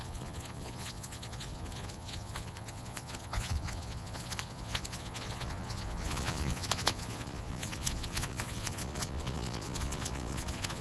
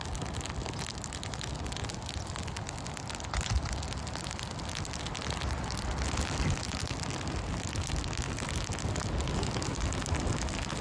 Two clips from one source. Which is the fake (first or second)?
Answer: first